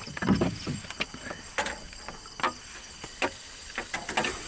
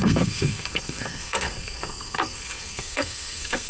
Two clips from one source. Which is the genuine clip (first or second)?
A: first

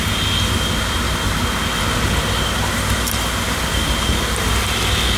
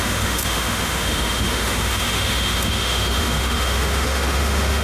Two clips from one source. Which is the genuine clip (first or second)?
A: first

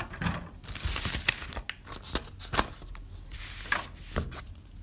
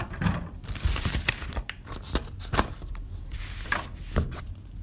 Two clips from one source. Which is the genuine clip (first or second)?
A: first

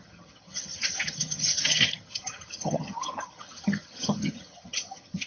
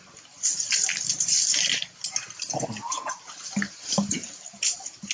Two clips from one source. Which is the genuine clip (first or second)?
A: second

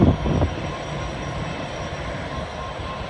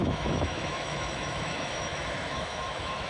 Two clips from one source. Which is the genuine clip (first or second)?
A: first